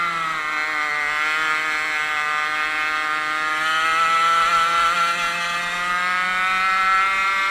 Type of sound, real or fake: real